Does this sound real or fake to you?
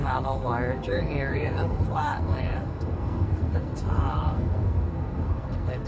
fake